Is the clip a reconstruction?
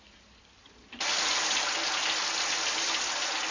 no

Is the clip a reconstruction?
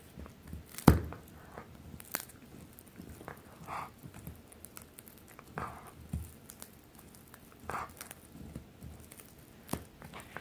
no